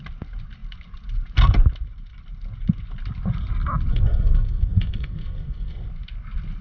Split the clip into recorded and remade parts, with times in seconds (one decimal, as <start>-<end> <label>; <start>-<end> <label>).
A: 0.0-3.9 recorded; 3.9-5.9 remade; 5.9-6.6 recorded